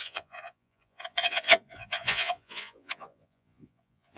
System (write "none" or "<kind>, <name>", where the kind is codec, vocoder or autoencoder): vocoder, Vocos